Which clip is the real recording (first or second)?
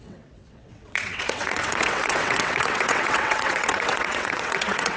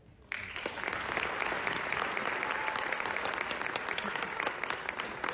second